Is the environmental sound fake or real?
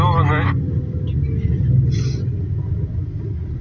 real